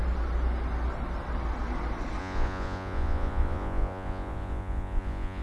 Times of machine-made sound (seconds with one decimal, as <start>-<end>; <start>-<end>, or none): 2.2-5.4